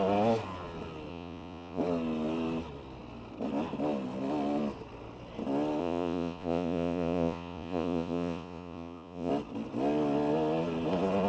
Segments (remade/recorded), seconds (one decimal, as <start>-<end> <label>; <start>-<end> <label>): 0.0-1.1 recorded; 1.1-1.8 remade; 1.8-5.8 recorded; 5.8-9.3 remade; 9.3-11.3 recorded